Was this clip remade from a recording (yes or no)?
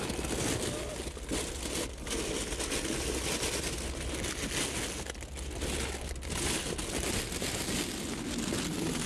no